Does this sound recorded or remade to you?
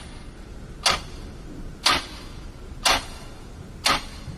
recorded